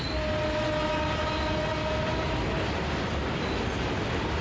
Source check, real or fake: real